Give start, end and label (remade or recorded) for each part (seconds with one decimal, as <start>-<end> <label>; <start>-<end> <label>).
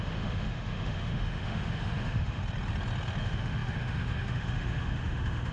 0.0-2.4 remade; 2.4-3.2 recorded; 3.2-5.5 remade